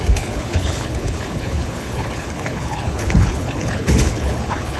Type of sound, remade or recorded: remade